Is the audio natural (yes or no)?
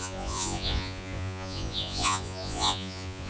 no